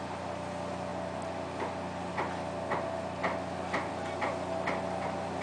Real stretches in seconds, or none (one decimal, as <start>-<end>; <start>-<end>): 0.0-5.4